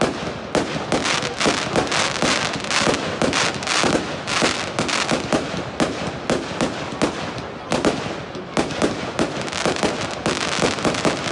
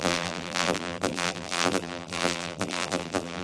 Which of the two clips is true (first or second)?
first